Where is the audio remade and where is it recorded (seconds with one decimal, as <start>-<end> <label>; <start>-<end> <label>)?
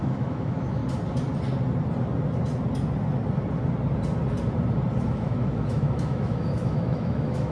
0.0-0.8 remade; 0.8-5.0 recorded; 5.0-7.5 remade